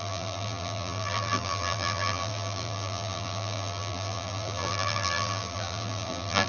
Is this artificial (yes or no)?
yes